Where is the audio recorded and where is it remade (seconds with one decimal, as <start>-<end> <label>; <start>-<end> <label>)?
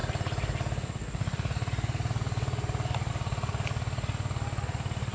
0.0-5.1 recorded